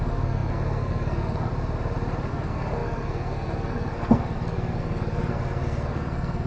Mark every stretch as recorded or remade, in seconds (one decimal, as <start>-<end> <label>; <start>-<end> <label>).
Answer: 0.0-1.5 remade; 1.5-2.3 recorded; 2.3-6.5 remade